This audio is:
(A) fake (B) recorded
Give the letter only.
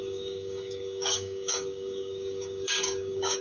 A